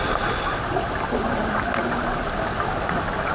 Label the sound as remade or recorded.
recorded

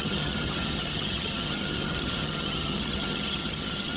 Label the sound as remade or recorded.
remade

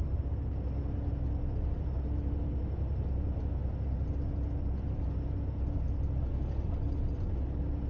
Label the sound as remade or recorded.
recorded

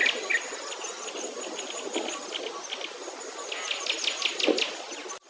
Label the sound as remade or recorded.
recorded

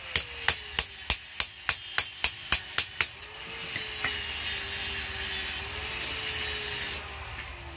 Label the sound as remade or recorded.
recorded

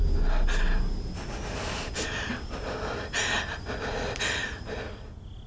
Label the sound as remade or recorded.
recorded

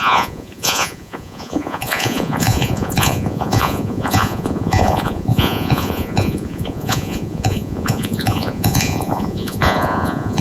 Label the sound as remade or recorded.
remade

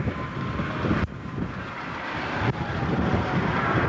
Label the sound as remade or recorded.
recorded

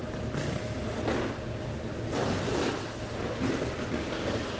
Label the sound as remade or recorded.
recorded